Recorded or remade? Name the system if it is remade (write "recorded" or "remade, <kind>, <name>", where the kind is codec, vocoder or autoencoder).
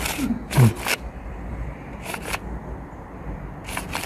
recorded